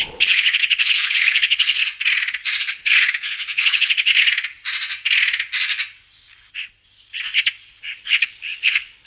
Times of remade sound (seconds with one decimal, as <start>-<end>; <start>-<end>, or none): 0.0-1.8; 2.6-4.1; 7.8-9.1